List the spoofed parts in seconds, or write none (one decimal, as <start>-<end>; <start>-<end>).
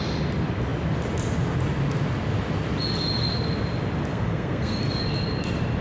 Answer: 4.1-4.8